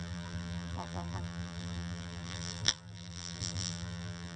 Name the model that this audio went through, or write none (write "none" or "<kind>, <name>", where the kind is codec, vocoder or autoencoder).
vocoder, BigVGAN v2